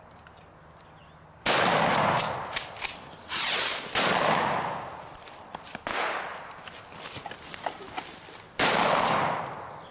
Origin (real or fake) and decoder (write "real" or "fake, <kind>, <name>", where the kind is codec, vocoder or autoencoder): real